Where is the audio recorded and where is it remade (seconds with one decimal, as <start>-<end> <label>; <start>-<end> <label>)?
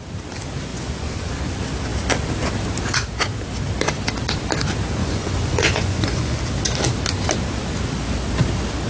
0.0-0.7 recorded; 0.7-1.3 remade; 1.3-5.0 recorded; 5.0-6.4 remade; 6.4-8.9 recorded